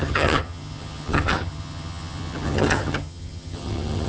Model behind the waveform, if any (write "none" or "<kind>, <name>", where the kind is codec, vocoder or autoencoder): vocoder, HiFi-GAN